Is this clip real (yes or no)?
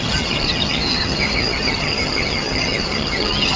no